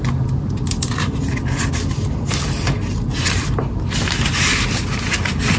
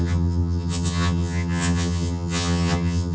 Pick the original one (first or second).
first